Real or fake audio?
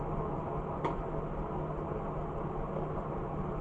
real